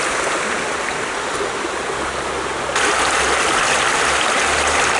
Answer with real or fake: real